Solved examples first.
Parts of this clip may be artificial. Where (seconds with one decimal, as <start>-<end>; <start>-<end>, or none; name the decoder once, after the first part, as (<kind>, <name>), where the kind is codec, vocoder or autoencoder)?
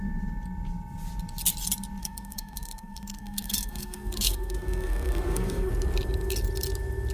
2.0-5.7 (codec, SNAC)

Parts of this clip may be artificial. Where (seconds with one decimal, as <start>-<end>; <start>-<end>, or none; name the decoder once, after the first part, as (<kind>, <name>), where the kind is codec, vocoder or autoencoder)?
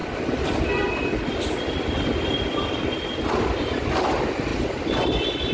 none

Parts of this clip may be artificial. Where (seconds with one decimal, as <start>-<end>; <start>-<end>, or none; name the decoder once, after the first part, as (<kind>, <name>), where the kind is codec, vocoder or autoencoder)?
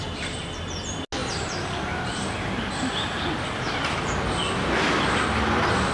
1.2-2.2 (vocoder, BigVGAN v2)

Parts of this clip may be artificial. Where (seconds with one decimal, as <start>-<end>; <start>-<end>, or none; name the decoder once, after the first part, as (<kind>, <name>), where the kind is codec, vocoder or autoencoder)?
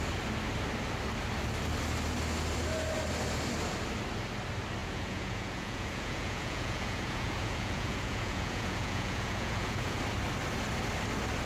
4.8-10.0 (vocoder, Vocos)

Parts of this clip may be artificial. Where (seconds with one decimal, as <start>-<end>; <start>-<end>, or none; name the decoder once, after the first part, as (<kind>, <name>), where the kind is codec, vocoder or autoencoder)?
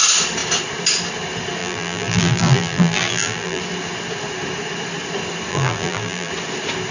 1.6-3.6 (vocoder, BigVGAN v2); 5.5-6.3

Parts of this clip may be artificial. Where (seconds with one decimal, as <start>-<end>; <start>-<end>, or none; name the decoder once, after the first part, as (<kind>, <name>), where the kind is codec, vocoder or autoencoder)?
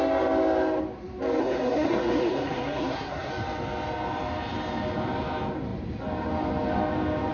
1.4-3.3 (codec, SNAC)